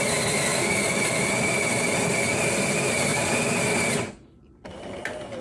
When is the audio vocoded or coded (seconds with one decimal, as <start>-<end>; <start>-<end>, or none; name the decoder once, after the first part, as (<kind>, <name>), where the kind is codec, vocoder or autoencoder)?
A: 3.1-4.8 (vocoder, BigVGAN v2)